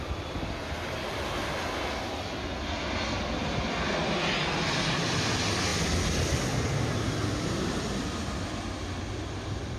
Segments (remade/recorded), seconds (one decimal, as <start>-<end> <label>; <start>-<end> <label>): 0.0-9.8 recorded

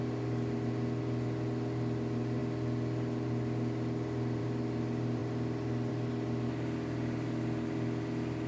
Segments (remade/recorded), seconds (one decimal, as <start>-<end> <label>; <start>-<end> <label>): 0.0-8.5 recorded

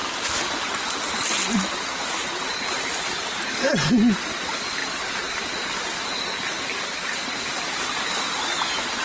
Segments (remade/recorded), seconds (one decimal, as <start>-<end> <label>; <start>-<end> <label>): 0.0-9.0 recorded

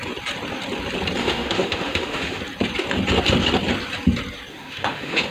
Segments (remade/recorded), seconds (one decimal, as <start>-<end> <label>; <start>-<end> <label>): 0.0-1.2 recorded; 1.2-2.4 remade; 2.4-4.5 recorded; 4.5-5.3 remade

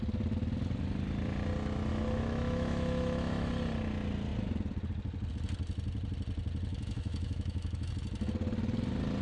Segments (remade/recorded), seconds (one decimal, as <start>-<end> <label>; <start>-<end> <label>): 0.0-1.9 recorded; 1.9-3.5 remade; 3.5-6.7 recorded; 6.7-7.9 remade; 7.9-9.2 recorded

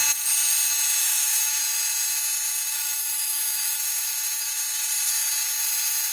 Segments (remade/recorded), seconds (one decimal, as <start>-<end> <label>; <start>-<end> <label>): 0.0-1.0 recorded; 1.0-1.6 remade; 1.6-2.7 recorded; 2.7-3.8 remade; 3.8-6.1 recorded